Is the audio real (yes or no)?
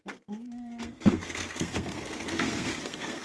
no